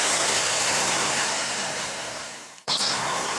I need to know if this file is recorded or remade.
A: remade